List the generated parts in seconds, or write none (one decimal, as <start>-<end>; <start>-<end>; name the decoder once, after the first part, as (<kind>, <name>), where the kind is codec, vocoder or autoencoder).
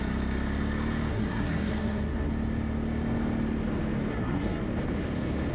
1.1-2.3 (codec, SNAC); 4.1-4.6